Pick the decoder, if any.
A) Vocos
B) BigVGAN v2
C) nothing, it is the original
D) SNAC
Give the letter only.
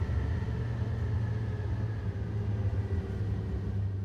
C